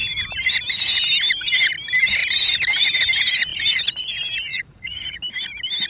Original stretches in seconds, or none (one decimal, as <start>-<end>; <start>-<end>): 0.0-4.5; 5.2-5.9